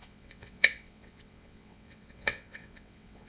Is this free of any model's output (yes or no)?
no